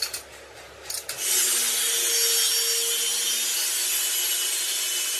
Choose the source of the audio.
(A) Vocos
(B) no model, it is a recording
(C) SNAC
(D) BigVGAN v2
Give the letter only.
B